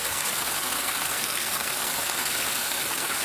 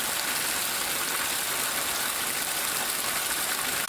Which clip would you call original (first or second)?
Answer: second